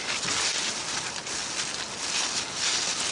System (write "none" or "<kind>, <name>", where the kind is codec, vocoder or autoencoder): none